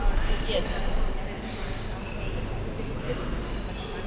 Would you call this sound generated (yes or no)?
no